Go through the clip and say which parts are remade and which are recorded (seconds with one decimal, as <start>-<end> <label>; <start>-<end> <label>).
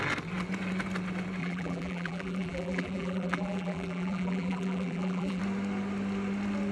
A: 0.0-1.4 recorded; 1.4-5.4 remade; 5.4-6.7 recorded